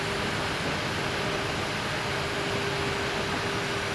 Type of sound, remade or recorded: recorded